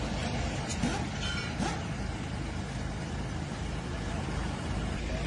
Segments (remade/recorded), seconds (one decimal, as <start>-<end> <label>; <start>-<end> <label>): 0.0-5.3 recorded